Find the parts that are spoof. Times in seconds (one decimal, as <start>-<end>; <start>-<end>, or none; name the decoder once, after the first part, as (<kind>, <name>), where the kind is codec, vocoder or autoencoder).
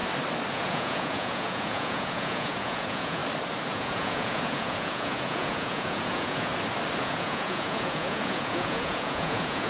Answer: 0.5-3.2 (vocoder, Vocos); 3.7-6.5; 7.0-9.7